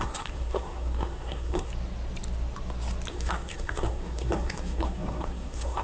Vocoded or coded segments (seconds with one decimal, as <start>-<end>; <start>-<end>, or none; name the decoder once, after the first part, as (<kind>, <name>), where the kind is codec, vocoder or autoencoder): 0.0-1.7 (codec, SNAC); 3.1-5.8